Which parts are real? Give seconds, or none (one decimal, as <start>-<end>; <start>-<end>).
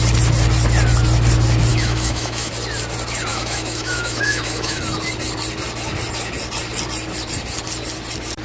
0.0-1.7; 2.5-3.3; 4.8-8.4